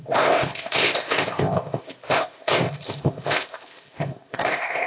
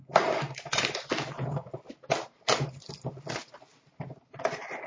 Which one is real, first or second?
second